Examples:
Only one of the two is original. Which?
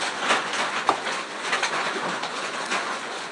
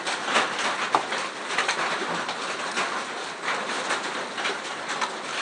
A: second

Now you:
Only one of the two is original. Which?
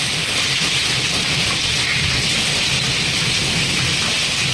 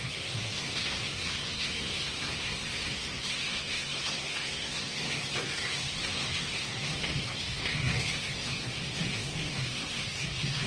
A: first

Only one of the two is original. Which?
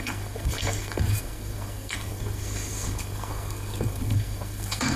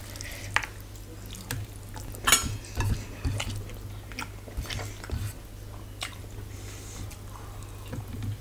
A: second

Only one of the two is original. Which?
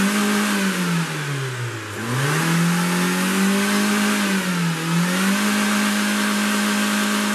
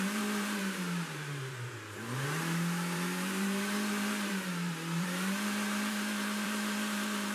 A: first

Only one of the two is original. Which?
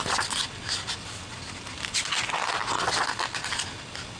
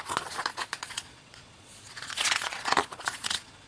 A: first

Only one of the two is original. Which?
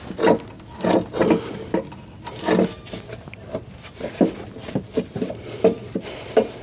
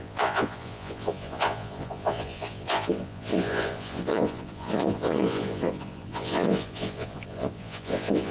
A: first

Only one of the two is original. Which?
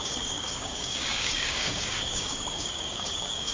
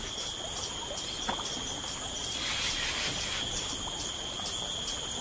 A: second